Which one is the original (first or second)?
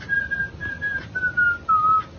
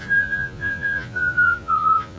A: first